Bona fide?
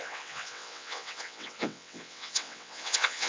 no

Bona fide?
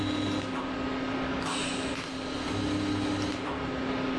yes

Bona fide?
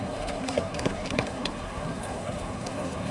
no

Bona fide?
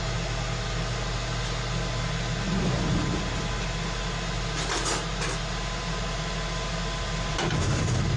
yes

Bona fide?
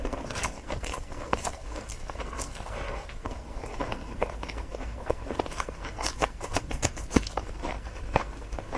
no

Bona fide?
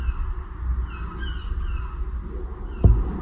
yes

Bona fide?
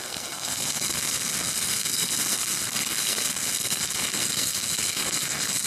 no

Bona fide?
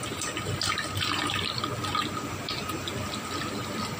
yes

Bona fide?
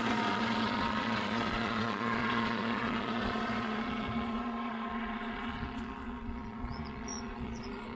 no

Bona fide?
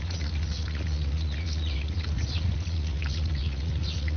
no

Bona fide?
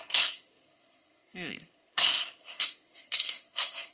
no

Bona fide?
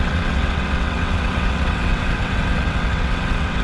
no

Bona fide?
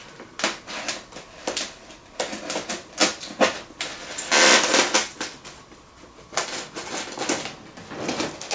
yes